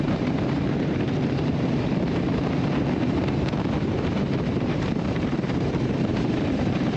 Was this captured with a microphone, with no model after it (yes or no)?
no